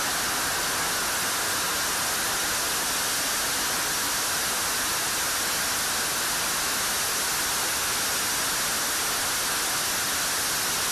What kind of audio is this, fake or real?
real